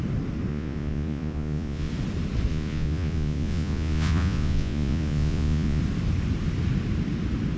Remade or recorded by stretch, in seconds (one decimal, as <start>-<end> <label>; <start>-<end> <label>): 0.0-0.5 recorded; 0.5-1.9 remade; 1.9-2.5 recorded; 2.5-5.8 remade; 5.8-7.6 recorded

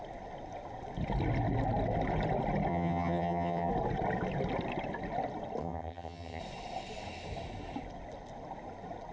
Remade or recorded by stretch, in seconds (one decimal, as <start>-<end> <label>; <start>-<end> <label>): 0.0-2.7 recorded; 2.7-3.7 remade; 3.7-5.6 recorded; 5.6-6.4 remade; 6.4-9.1 recorded

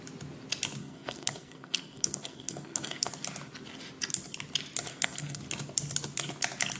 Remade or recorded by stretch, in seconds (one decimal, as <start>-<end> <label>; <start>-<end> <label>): 0.0-0.8 recorded; 0.8-3.1 remade; 3.1-4.9 recorded; 4.9-5.4 remade; 5.4-6.8 recorded